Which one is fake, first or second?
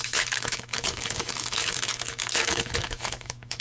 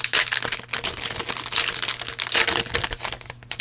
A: first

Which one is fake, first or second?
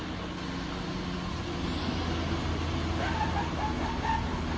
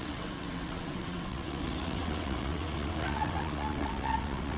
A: second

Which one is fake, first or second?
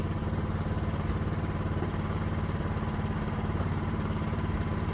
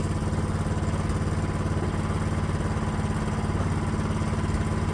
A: first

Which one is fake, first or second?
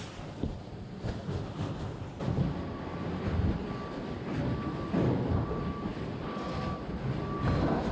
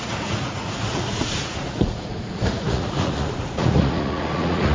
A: second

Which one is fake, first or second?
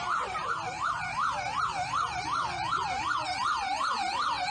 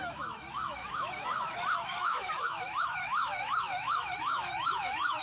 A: second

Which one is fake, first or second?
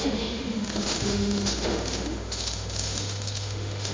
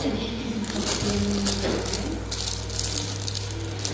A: first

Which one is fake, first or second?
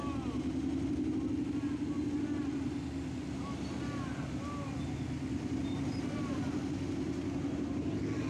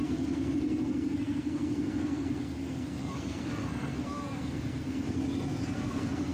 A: second